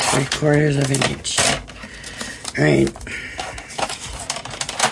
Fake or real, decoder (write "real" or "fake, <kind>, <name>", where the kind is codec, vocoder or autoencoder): real